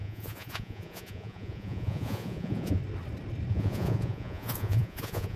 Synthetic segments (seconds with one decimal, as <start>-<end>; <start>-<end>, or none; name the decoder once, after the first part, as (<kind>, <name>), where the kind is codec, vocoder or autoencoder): 0.0-2.8 (vocoder, Vocos); 3.5-5.4